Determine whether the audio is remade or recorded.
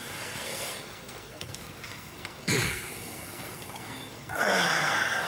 remade